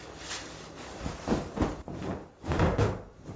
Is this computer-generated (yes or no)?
no